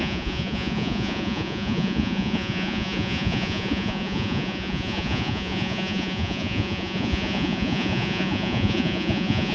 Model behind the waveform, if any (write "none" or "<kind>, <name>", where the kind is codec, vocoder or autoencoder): vocoder, Vocos